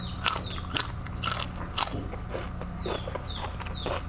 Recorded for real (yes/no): yes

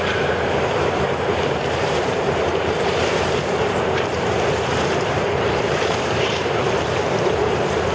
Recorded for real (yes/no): no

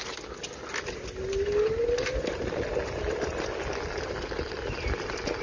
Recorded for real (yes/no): yes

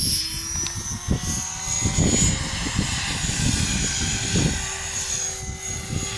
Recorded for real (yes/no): yes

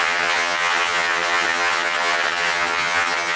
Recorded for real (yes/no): no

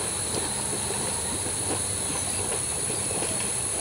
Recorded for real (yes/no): no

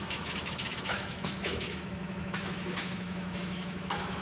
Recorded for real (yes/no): no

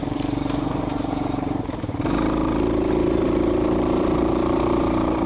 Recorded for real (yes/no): no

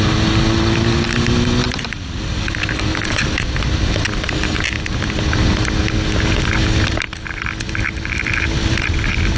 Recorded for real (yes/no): yes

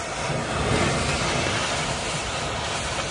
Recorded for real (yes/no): yes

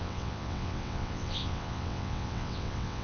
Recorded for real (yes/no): no